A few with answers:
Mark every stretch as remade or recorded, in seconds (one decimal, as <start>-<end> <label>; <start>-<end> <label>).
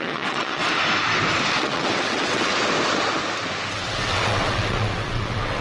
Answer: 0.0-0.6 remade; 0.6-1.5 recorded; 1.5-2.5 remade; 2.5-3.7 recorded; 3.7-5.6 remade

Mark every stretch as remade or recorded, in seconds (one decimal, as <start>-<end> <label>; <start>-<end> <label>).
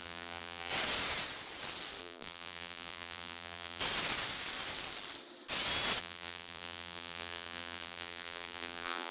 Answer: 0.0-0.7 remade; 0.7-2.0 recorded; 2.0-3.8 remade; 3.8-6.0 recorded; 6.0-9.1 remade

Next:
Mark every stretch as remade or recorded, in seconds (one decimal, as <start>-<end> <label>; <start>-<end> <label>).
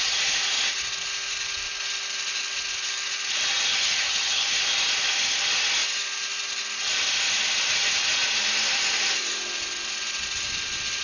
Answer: 0.0-3.7 recorded; 3.7-4.5 remade; 4.5-11.0 recorded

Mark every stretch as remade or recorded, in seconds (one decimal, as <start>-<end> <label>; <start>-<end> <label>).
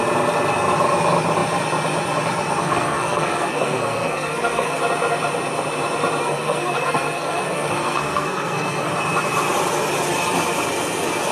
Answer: 0.0-2.6 recorded; 2.6-4.8 remade; 4.8-6.2 recorded; 6.2-8.9 remade; 8.9-11.3 recorded